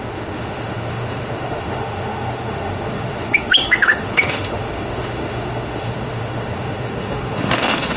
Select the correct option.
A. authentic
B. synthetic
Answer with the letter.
B